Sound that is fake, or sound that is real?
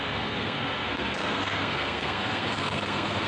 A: fake